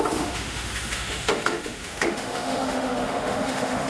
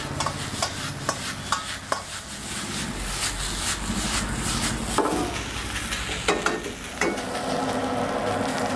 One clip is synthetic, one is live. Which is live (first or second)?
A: second